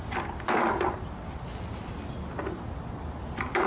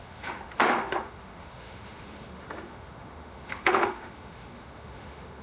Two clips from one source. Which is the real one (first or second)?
first